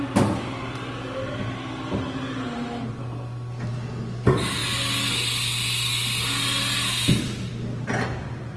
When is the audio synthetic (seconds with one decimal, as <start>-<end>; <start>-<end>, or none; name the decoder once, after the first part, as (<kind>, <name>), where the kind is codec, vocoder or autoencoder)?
none